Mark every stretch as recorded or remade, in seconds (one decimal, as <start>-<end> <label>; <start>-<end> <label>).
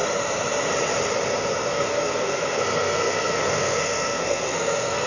0.0-1.7 recorded; 1.7-5.1 remade